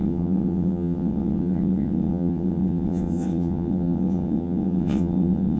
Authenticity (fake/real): fake